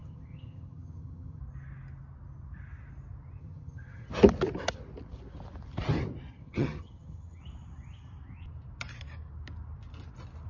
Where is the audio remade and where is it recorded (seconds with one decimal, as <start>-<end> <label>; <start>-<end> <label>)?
0.0-1.4 remade; 1.4-3.4 recorded; 3.4-4.1 remade; 4.1-6.3 recorded; 6.3-7.4 remade; 7.4-10.5 recorded